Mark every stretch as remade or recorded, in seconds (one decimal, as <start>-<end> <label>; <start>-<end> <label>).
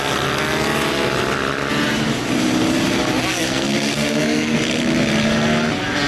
0.0-3.3 recorded; 3.3-4.6 remade; 4.6-6.1 recorded